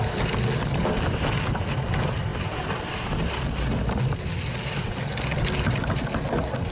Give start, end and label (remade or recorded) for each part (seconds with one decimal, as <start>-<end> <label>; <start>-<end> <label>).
0.0-6.7 recorded